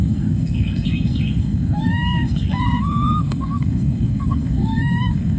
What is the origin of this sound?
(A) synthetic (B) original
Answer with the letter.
A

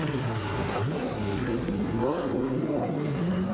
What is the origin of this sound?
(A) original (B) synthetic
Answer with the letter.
B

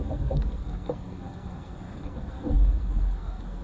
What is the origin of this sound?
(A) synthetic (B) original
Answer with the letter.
A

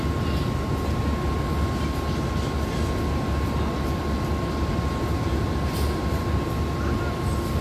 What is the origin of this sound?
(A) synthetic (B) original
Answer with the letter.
B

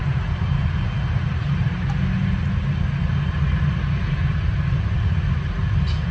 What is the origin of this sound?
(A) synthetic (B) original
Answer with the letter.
B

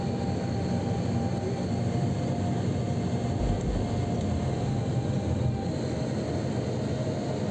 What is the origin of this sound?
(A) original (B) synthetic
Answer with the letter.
A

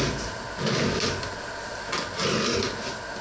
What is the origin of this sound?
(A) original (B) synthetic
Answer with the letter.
A